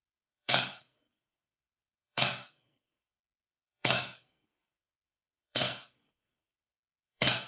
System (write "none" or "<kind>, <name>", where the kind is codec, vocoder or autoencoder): codec, SNAC